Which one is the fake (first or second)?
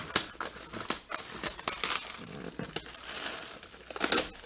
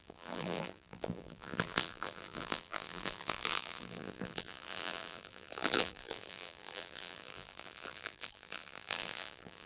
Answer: second